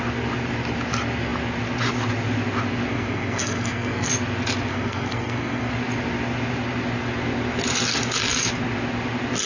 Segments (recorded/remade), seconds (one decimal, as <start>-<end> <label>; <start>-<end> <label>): 0.0-2.9 recorded; 2.9-4.1 remade; 4.1-4.7 recorded; 4.7-5.7 remade; 5.7-9.5 recorded

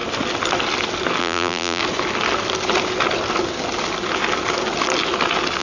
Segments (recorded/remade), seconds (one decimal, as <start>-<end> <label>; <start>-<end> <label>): 0.0-1.2 recorded; 1.2-1.8 remade; 1.8-5.6 recorded

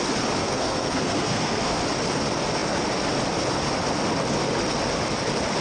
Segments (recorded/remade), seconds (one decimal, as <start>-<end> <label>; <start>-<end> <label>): 0.0-0.4 recorded; 0.4-1.8 remade; 1.8-5.6 recorded

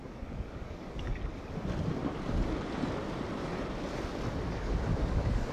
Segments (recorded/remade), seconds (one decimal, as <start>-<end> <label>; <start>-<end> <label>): 0.0-1.2 remade; 1.2-4.5 recorded; 4.5-5.5 remade

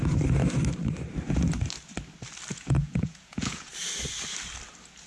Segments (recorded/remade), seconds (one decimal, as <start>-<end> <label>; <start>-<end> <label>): 0.0-2.5 recorded; 2.5-3.7 remade; 3.7-5.1 recorded